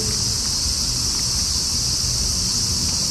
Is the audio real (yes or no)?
yes